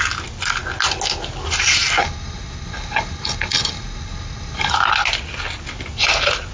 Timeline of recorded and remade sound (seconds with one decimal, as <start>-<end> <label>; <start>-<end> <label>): 0.0-2.0 recorded; 2.0-4.7 remade; 4.7-6.5 recorded